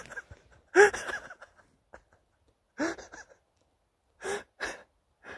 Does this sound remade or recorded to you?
recorded